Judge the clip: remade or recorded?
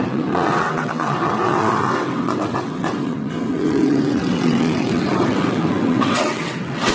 remade